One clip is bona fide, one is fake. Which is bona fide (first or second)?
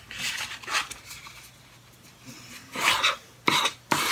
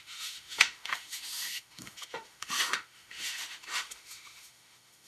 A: first